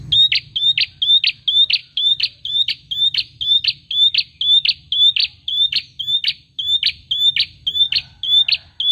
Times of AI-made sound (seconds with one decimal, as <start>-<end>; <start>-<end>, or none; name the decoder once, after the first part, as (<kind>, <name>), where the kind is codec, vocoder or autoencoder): 1.8-2.7 (vocoder, BigVGAN v2); 5.2-6.0

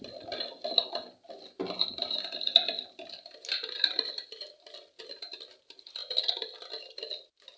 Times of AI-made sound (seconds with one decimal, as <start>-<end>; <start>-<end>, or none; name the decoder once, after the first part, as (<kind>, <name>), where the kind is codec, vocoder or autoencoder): none

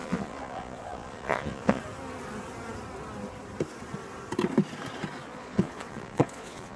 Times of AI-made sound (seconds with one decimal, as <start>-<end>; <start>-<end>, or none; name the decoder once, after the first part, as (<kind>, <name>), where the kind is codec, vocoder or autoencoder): 0.0-1.8 (vocoder, Vocos); 5.2-6.8

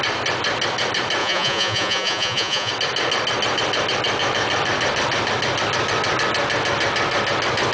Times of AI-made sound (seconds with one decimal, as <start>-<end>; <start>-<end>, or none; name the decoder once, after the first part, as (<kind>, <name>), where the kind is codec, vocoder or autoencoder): 1.2-2.7 (vocoder, Vocos)

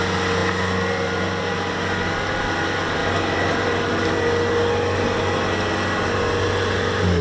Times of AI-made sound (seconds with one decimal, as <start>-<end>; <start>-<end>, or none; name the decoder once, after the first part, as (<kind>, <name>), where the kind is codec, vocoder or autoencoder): none

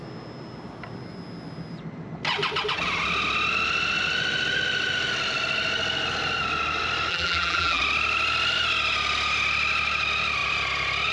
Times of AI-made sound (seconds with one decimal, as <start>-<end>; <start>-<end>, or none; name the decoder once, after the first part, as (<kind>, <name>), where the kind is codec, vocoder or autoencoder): 7.1-7.8 (vocoder, BigVGAN v2)

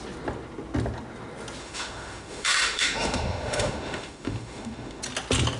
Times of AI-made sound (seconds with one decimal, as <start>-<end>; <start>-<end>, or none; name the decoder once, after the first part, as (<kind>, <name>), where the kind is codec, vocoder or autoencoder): 1.6-5.0 (autoencoder, DAC-VAE)